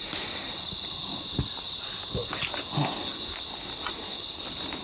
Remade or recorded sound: recorded